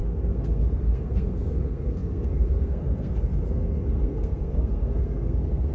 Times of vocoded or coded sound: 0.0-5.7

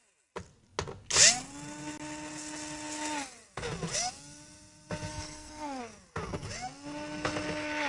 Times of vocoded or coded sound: 5.1-5.8

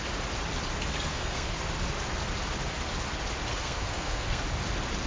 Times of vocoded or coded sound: 0.9-1.6; 3.5-4.4

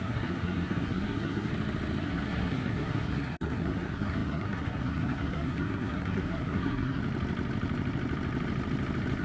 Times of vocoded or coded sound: 0.0-1.5; 2.0-7.0

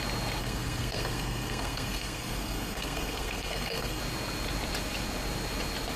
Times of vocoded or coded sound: 0.4-4.0

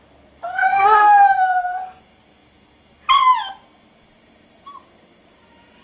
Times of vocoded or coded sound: 0.7-2.0

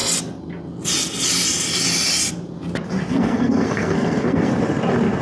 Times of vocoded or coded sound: 3.1-4.5